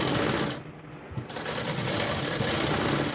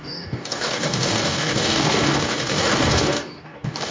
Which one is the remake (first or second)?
second